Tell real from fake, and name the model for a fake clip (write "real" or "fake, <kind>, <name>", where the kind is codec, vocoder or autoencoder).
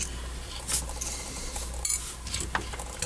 real